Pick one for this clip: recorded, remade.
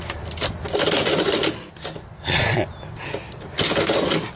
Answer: recorded